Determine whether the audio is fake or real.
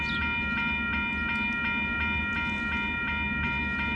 real